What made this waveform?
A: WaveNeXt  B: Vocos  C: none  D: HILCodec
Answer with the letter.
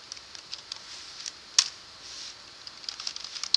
C